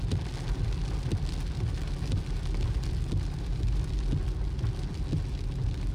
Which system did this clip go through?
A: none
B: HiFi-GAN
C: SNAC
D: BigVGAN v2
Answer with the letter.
A